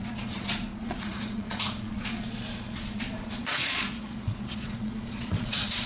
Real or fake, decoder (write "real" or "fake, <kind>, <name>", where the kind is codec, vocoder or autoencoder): fake, vocoder, Vocos